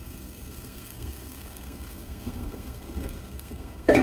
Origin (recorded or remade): remade